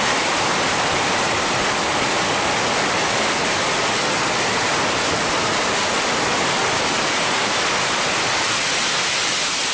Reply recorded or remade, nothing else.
recorded